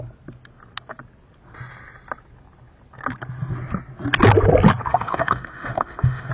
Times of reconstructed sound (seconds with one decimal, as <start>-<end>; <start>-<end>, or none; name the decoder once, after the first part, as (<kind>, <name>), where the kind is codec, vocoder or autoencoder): 4.9-6.3 (autoencoder, DAC-VAE)